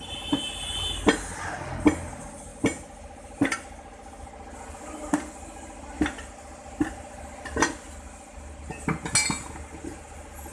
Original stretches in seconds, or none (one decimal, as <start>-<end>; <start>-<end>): 0.0-10.5